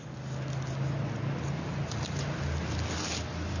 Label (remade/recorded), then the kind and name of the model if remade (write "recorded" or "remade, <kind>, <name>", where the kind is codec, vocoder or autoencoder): recorded